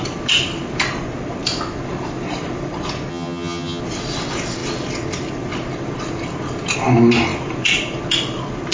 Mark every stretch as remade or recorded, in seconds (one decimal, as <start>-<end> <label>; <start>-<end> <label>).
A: 0.0-3.1 recorded; 3.1-3.8 remade; 3.8-8.7 recorded